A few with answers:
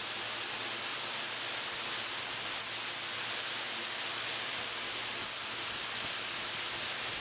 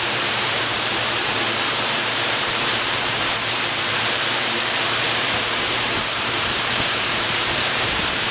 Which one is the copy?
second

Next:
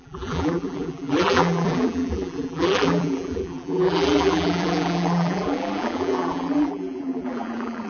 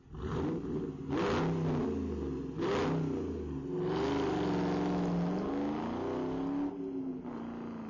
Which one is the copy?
first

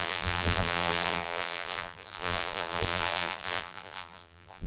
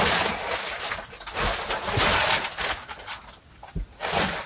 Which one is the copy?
first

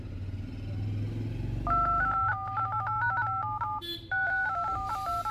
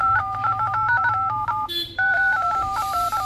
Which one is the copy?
second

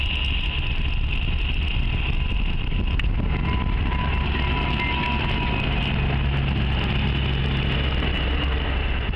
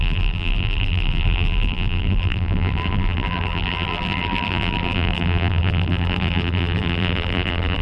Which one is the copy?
second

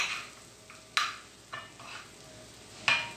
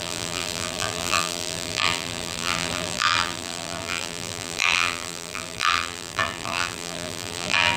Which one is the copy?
second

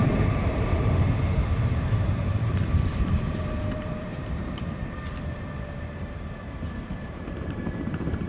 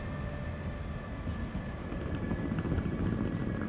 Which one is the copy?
first